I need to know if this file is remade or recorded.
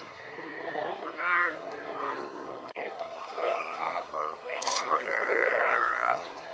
remade